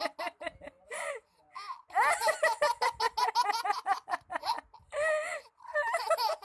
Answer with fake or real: real